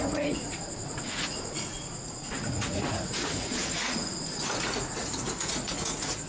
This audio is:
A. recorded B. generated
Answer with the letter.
B